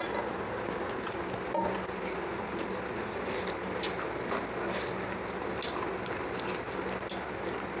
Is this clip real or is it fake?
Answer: real